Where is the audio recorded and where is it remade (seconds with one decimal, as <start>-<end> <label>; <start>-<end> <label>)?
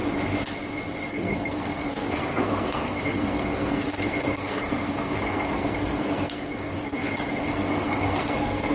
0.0-1.1 recorded; 1.1-8.7 remade